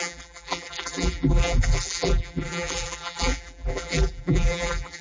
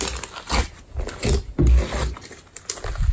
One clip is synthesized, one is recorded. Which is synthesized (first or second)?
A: first